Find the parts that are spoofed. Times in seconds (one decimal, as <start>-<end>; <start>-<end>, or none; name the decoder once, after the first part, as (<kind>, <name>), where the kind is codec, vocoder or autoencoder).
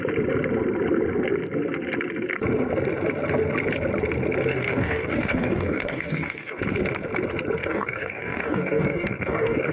4.5-6.6 (codec, DAC); 7.6-9.7